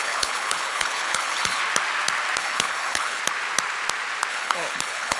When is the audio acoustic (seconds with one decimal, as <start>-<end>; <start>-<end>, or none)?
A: 1.6-2.4; 3.2-4.3